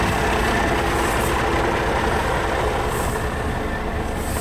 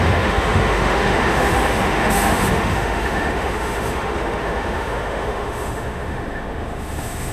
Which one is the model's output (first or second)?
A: second